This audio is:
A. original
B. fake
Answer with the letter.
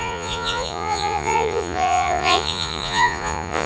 B